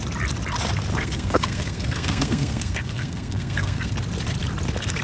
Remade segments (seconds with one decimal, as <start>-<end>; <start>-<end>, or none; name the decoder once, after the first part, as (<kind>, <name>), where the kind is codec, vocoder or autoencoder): 0.9-3.9 (codec, SNAC)